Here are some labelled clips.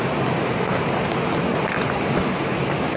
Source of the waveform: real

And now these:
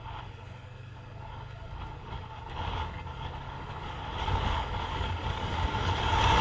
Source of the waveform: fake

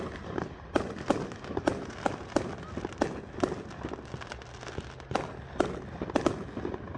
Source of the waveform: real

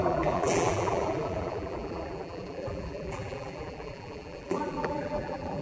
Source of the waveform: fake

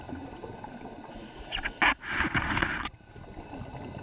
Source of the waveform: real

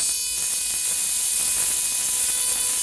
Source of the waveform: real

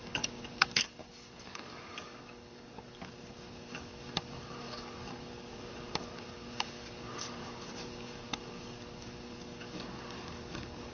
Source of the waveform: fake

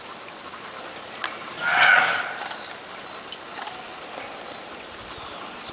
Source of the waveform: real